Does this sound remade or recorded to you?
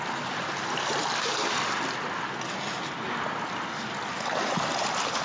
recorded